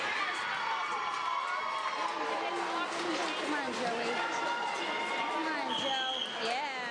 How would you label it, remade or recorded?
recorded